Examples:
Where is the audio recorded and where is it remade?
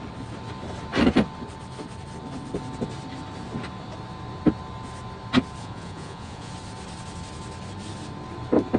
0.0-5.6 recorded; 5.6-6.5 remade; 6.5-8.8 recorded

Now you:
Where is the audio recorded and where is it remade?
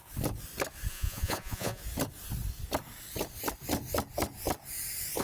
0.0-0.9 recorded; 0.9-1.8 remade; 1.8-5.2 recorded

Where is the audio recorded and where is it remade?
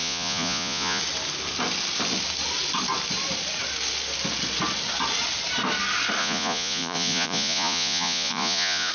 0.0-1.0 remade; 1.0-6.2 recorded; 6.2-8.9 remade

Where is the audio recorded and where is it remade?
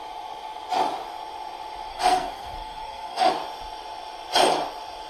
0.0-1.9 recorded; 1.9-3.3 remade; 3.3-5.1 recorded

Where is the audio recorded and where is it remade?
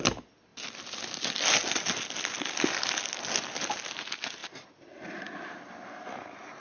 0.0-6.6 recorded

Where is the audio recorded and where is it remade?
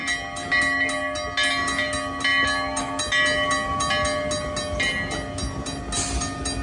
0.0-6.6 recorded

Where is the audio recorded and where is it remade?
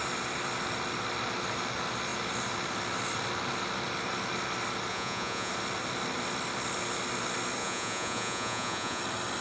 0.0-4.9 recorded; 4.9-5.5 remade; 5.5-7.6 recorded; 7.6-9.0 remade; 9.0-9.4 recorded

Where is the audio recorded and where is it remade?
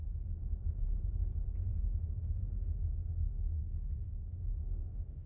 0.0-1.7 recorded; 1.7-5.3 remade